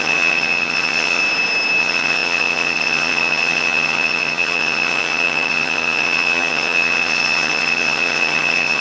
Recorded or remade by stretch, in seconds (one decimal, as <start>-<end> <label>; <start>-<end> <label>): 0.0-1.2 remade; 1.2-1.8 recorded; 1.8-8.8 remade